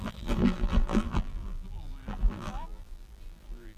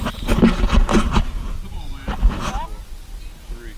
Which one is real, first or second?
second